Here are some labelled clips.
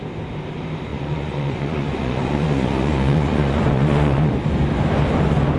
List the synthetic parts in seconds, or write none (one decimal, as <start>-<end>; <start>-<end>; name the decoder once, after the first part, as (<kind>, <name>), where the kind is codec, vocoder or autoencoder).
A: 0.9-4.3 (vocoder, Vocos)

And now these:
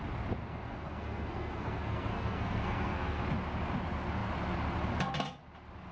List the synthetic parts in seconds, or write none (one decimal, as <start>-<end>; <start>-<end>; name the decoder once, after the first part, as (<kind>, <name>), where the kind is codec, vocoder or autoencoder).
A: 0.4-3.2 (codec, SNAC)

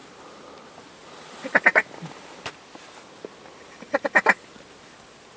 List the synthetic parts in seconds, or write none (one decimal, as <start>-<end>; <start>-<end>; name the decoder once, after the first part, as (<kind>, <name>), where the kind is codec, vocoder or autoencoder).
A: none